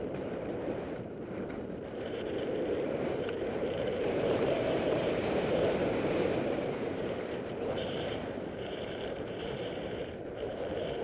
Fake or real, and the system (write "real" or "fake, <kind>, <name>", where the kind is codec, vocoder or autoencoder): fake, vocoder, BigVGAN v2